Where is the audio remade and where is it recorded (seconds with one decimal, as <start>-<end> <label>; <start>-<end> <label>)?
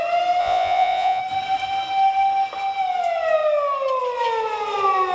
0.0-0.4 recorded; 0.4-1.2 remade; 1.2-5.1 recorded